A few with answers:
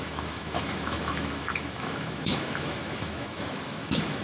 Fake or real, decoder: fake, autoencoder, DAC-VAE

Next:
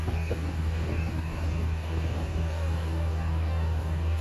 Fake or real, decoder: fake, codec, DAC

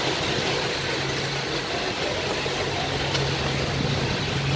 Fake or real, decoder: real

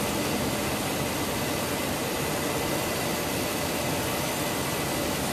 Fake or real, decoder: real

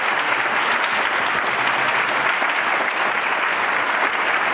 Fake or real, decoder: real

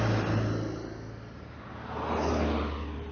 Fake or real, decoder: real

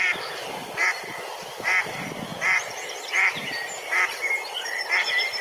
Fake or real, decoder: real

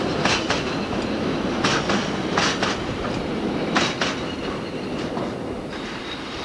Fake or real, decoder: real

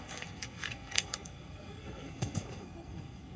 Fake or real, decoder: fake, codec, SNAC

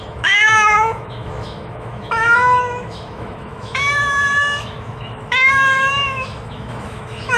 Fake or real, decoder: fake, autoencoder, DAC-VAE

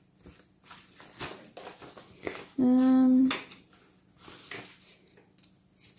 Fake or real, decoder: real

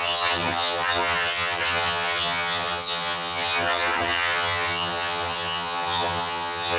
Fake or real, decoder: fake, vocoder, HiFi-GAN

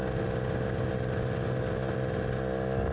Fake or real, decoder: real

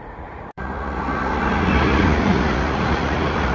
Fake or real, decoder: fake, vocoder, Vocos